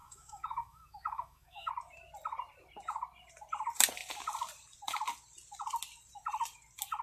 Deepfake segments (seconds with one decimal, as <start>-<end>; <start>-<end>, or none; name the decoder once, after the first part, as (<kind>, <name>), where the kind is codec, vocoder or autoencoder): 0.0-1.7 (autoencoder, DAC-VAE)